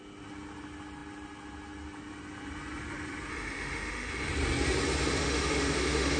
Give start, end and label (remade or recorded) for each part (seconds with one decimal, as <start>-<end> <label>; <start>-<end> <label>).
0.0-3.3 recorded; 3.3-4.3 remade; 4.3-5.2 recorded; 5.2-6.2 remade